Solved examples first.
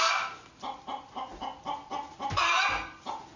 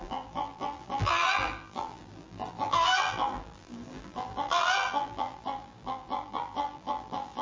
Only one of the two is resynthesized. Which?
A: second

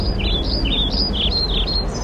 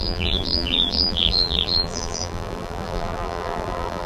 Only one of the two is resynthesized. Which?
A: second